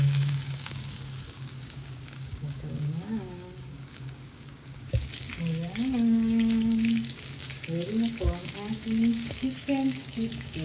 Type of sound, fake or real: fake